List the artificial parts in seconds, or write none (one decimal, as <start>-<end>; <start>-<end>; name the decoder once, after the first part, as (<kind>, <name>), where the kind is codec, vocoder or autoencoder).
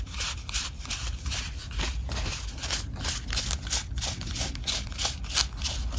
none